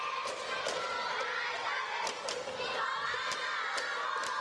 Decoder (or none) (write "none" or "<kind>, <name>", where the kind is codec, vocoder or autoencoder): none